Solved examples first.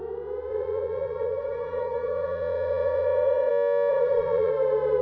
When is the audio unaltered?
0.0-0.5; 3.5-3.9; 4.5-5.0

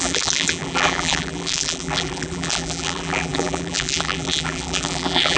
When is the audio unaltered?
none

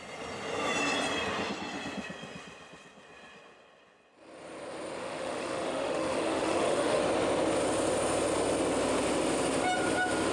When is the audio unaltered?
0.0-5.0; 7.0-10.3

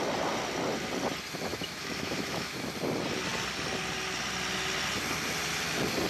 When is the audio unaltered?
0.0-1.5; 2.7-6.1

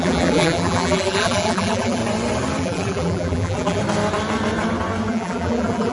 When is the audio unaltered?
2.0-2.6; 3.8-5.1

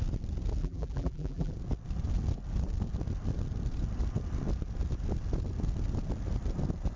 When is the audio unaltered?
0.0-0.6; 1.5-7.0